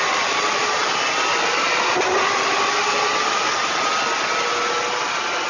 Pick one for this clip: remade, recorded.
recorded